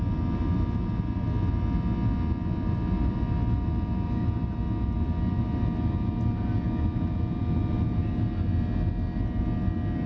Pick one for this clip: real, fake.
real